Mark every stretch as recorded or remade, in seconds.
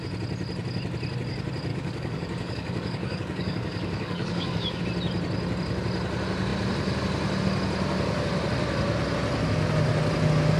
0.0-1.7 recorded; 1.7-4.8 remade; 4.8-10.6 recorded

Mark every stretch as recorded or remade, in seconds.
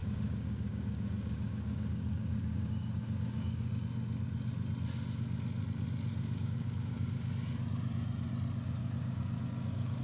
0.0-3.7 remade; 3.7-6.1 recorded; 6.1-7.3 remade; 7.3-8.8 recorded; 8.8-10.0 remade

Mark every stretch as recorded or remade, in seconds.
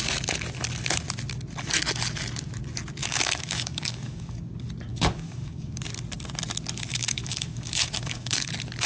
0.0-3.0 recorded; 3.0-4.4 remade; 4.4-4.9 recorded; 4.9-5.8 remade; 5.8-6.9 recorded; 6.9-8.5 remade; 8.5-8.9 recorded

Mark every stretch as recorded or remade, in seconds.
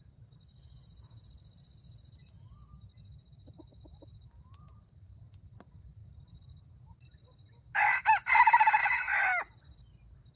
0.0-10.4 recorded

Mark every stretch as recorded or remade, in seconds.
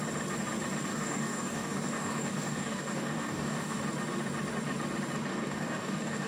0.0-0.9 recorded; 0.9-3.8 remade; 3.8-5.3 recorded; 5.3-6.3 remade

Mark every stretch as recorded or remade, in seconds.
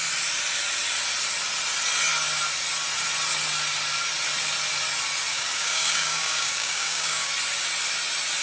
0.0-5.3 recorded; 5.3-7.3 remade; 7.3-8.4 recorded